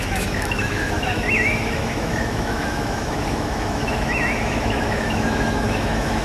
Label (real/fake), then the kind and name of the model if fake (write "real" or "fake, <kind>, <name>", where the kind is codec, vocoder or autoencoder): fake, autoencoder, DAC-VAE